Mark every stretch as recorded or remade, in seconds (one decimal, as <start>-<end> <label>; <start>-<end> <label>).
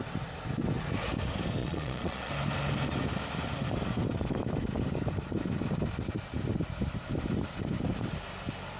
0.0-1.6 recorded; 1.6-2.3 remade; 2.3-8.8 recorded